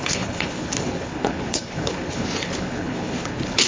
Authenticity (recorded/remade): remade